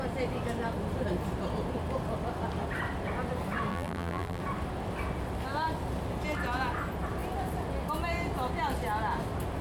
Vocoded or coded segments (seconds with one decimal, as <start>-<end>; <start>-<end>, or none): 3.7-4.4